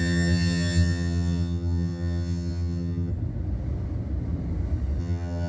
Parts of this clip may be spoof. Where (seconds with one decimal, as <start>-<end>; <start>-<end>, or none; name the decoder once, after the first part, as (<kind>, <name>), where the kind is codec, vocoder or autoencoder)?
0.0-3.1 (vocoder, HiFi-GAN); 5.0-5.5